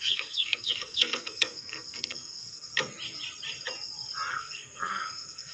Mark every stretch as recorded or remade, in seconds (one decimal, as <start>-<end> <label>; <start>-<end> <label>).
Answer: 0.0-2.7 remade; 2.7-4.3 recorded; 4.3-5.5 remade